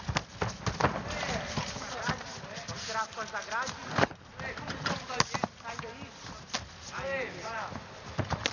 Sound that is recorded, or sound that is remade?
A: recorded